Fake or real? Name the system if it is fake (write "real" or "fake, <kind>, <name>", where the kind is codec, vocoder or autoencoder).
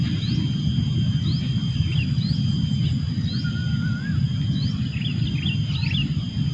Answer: real